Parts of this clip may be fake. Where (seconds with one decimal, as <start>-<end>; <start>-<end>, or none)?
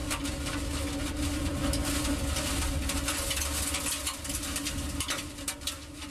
1.1-1.6; 5.1-6.1